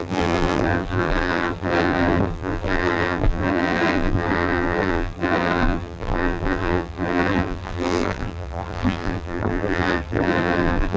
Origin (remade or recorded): remade